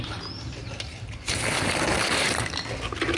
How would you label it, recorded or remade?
recorded